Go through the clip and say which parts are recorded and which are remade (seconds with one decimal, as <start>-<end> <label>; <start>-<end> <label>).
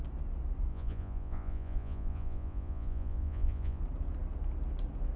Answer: 0.0-0.7 recorded; 0.7-3.8 remade; 3.8-5.2 recorded